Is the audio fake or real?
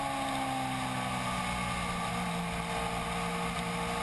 real